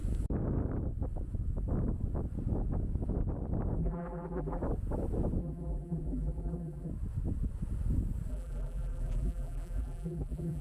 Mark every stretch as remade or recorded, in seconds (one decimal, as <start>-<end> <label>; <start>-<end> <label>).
0.0-3.8 recorded; 3.8-4.6 remade; 4.6-5.4 recorded; 5.4-6.9 remade; 6.9-8.3 recorded; 8.3-10.6 remade